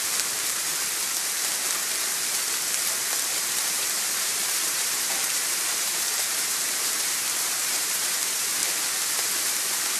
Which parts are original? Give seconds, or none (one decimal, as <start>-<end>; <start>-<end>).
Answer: 0.7-3.7; 8.6-9.5

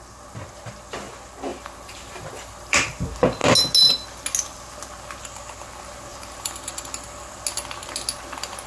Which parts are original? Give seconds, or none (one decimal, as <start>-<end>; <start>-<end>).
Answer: 0.0-1.5; 3.0-6.1; 6.7-8.7

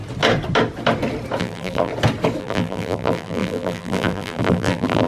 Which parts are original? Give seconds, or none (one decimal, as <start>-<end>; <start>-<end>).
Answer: 0.0-1.4; 1.9-2.4

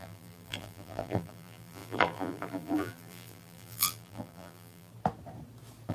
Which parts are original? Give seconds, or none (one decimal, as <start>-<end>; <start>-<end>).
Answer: 4.9-5.9

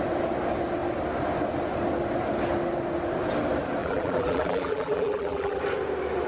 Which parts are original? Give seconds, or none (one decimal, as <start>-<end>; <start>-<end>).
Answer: 0.0-3.8; 5.6-6.3

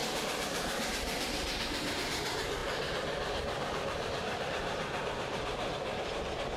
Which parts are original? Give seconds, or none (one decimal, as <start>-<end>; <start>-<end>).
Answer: none